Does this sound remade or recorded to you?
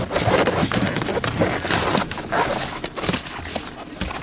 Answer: recorded